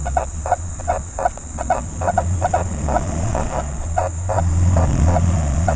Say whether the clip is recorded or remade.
remade